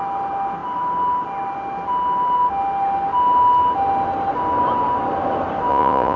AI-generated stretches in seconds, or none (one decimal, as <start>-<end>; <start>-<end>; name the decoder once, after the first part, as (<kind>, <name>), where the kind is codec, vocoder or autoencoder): 5.7-6.2 (vocoder, Vocos)